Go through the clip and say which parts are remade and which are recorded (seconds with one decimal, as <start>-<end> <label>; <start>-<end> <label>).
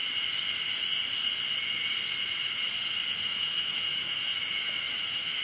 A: 0.0-3.2 recorded; 3.2-5.4 remade